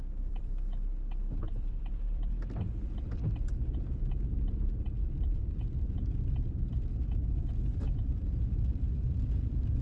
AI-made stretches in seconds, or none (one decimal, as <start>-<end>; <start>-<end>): 0.0-9.8